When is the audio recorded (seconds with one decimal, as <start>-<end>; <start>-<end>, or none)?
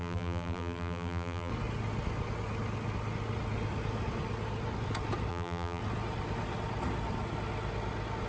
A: 1.5-5.3; 5.8-8.3